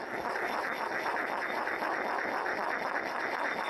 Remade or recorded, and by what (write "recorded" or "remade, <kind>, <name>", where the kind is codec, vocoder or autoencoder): recorded